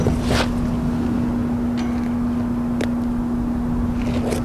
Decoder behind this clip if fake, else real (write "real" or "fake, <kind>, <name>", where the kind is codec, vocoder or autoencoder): real